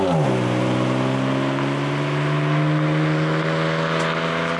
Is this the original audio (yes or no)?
yes